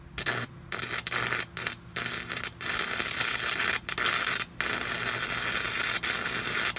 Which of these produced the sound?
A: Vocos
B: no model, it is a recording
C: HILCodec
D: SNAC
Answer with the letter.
B